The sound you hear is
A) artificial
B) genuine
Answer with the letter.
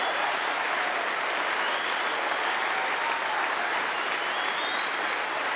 B